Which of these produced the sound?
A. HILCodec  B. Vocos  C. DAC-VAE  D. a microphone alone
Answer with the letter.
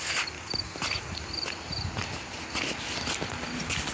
D